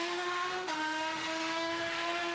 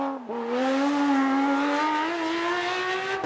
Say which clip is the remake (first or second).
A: first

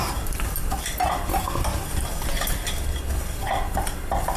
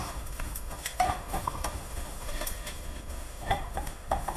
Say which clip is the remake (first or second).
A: second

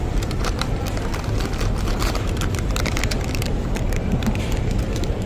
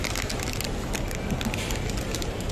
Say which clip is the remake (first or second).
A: first